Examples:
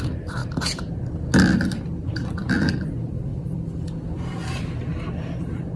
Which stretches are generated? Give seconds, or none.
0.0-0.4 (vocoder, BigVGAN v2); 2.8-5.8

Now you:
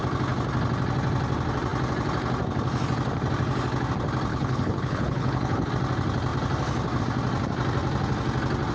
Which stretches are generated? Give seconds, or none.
4.3-5.7 (codec, HILCodec)

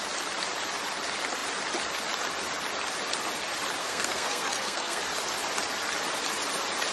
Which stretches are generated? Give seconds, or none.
3.8-5.0 (codec, SNAC)

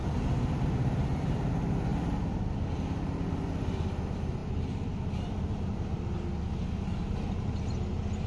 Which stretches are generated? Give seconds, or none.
0.0-1.5 (vocoder, BigVGAN v2); 1.9-2.5; 4.4-5.8

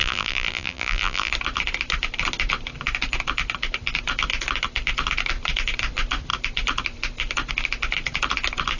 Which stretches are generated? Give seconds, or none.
0.0-1.3 (vocoder, BigVGAN v2)

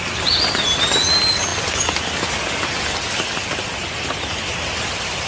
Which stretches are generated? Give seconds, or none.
none